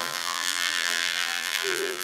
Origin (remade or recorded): remade